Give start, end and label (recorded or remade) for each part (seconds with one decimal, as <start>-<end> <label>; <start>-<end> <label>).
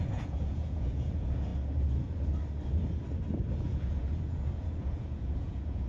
0.0-1.5 remade; 1.5-3.5 recorded; 3.5-5.9 remade